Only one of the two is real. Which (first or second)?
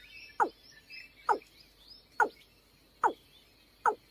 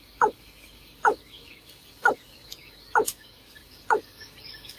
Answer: first